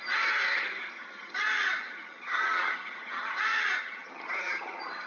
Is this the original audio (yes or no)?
no